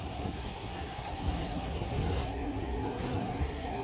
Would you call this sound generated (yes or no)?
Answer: yes